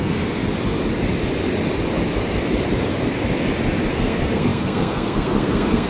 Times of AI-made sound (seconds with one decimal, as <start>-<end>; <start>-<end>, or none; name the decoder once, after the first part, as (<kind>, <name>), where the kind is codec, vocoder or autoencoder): 0.0-0.4 (codec, SNAC); 3.9-5.9